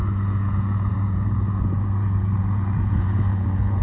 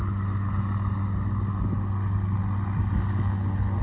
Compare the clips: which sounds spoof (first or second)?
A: first